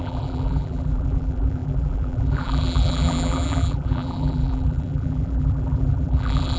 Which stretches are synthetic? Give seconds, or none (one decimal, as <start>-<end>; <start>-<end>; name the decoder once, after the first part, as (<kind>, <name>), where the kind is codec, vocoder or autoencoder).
0.0-6.6 (vocoder, BigVGAN v2)